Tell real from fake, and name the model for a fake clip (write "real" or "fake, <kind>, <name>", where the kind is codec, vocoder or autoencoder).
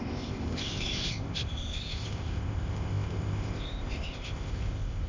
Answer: fake, codec, ZipCodec